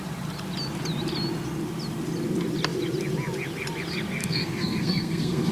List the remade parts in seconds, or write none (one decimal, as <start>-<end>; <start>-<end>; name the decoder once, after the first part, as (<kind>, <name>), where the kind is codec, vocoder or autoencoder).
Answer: 4.2-5.5 (codec, SNAC)

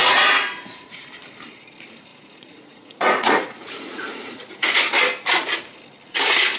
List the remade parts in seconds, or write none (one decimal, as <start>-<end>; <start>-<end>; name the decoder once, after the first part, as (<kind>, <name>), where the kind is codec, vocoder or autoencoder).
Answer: 0.0-1.0 (vocoder, Vocos); 2.1-4.7